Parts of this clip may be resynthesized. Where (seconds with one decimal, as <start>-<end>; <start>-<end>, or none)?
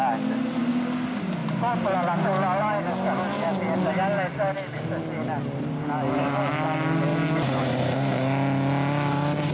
none